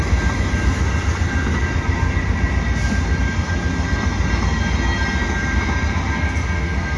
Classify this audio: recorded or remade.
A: recorded